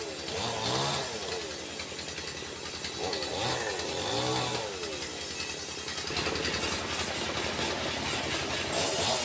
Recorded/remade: recorded